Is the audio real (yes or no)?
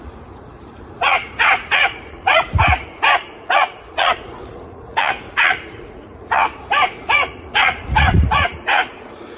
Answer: no